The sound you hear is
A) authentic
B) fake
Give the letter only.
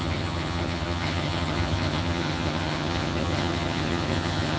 B